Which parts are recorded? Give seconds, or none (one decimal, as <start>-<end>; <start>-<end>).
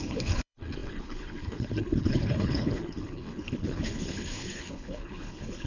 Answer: none